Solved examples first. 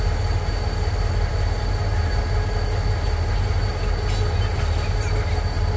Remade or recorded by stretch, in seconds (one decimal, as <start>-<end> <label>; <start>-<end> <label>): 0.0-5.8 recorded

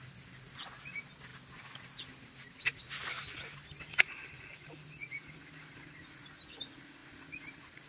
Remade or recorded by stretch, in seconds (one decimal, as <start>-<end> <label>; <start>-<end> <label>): 0.0-7.9 recorded

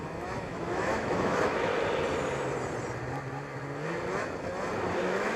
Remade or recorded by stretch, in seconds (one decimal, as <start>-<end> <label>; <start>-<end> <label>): 0.0-1.7 remade; 1.7-4.9 recorded; 4.9-5.4 remade

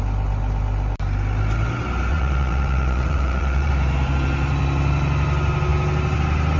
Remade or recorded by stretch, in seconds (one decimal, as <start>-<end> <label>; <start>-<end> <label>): 0.0-2.1 recorded; 2.1-3.7 remade; 3.7-6.6 recorded

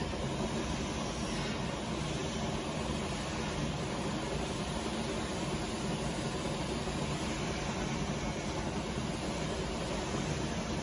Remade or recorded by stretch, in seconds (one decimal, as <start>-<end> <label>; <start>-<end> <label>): 0.0-10.8 recorded

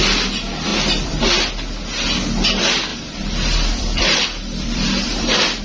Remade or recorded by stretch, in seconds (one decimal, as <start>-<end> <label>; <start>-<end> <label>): 0.0-0.7 recorded; 0.7-1.2 remade; 1.2-2.9 recorded; 2.9-5.6 remade

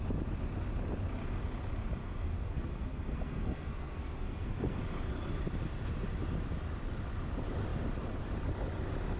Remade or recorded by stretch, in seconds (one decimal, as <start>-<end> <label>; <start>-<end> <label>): 0.0-2.0 recorded; 2.0-4.8 remade; 4.8-9.2 recorded